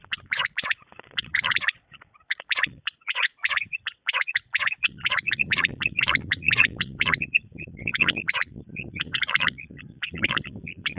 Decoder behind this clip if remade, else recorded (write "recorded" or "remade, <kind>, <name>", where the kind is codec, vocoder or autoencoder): remade, vocoder, Vocos